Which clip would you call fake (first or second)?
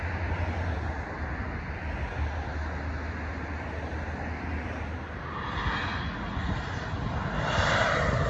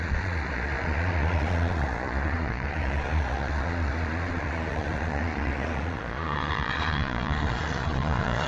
second